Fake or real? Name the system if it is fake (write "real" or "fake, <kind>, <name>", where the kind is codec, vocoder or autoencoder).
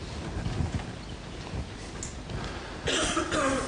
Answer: real